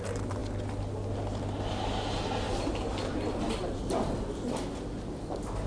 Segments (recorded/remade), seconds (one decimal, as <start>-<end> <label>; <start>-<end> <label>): 0.0-3.6 recorded; 3.6-4.6 remade; 4.6-5.7 recorded